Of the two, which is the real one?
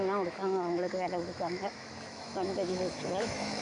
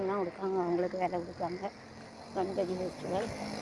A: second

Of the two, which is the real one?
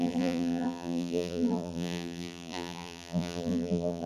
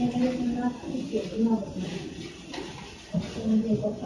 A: second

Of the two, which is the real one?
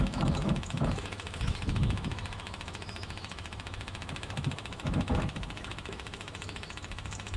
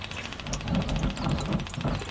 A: second